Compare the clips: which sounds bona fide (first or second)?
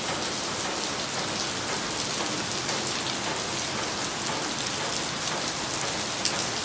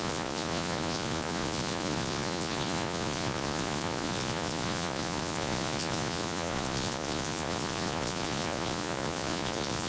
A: first